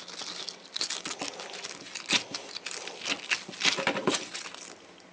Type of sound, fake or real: real